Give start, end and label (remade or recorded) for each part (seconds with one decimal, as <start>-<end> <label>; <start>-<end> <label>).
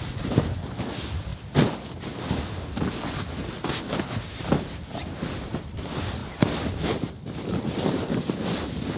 0.0-1.3 remade; 1.3-5.4 recorded; 5.4-9.0 remade